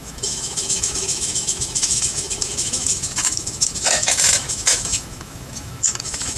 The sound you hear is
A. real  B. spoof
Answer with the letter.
B